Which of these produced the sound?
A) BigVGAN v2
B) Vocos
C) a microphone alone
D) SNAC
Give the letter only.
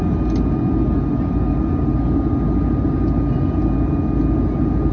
C